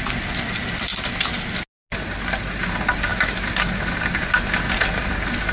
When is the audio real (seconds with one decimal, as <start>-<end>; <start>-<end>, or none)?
0.0-5.5